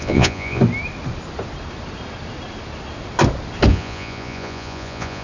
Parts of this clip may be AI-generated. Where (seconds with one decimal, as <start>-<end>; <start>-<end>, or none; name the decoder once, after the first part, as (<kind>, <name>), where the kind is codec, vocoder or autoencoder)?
0.0-0.6 (vocoder, Vocos); 3.7-5.2